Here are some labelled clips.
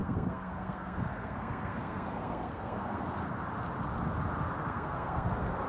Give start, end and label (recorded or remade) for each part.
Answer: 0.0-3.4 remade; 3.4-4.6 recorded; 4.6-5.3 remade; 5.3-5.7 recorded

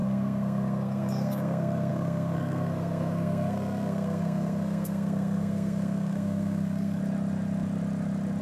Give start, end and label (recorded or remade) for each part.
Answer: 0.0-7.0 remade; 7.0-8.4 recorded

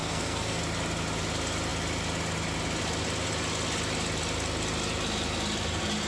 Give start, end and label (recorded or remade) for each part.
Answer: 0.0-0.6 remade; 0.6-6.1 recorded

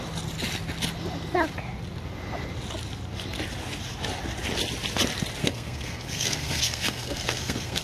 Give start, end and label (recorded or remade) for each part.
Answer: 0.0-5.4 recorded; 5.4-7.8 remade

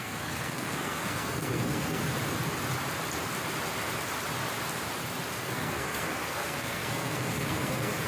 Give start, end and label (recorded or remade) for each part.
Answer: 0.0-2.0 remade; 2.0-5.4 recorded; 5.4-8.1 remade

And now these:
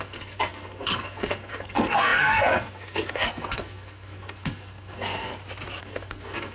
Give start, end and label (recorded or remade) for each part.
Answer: 0.0-5.3 remade; 5.3-5.8 recorded; 5.8-6.5 remade